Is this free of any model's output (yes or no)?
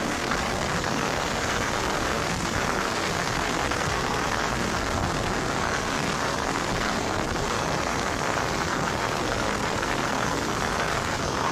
no